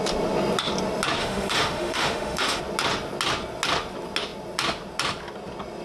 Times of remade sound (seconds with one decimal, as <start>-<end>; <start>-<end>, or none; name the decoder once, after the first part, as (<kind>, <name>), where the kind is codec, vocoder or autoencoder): 1.2-2.6 (autoencoder, DAC-VAE)